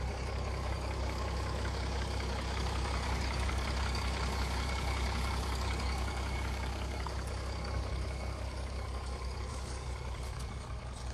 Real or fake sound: fake